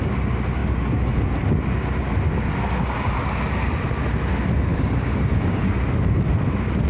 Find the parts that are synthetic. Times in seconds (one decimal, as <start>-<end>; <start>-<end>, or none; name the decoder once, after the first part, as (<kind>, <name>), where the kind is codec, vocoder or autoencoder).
4.7-5.7 (codec, DAC)